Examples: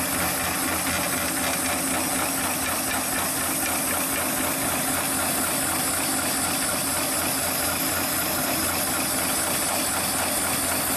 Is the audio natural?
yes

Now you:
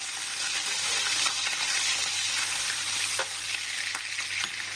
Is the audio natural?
yes